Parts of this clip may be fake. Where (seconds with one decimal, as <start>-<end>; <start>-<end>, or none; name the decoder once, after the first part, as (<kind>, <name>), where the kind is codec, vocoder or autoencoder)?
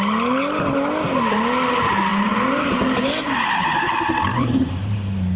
4.3-5.4 (vocoder, BigVGAN v2)